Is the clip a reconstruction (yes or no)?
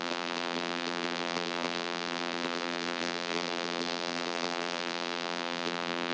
yes